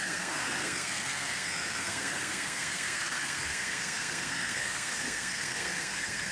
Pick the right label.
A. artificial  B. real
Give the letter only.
A